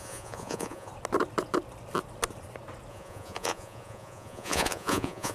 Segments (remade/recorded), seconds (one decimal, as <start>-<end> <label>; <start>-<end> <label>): 0.0-0.9 remade; 0.9-2.9 recorded; 2.9-5.3 remade